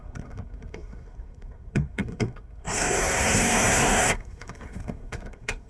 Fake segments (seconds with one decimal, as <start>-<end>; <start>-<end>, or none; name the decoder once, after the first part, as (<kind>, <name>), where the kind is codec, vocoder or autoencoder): 0.0-5.7 (codec, SNAC)